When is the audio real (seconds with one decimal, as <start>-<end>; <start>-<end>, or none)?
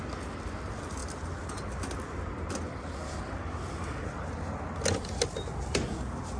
0.0-6.4